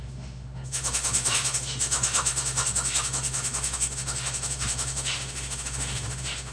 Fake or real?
fake